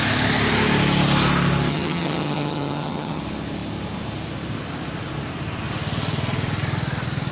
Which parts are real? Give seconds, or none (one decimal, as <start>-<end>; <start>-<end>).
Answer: 0.0-1.7; 3.2-7.3